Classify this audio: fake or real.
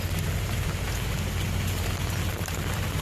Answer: real